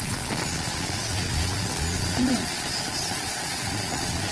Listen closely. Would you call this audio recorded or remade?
remade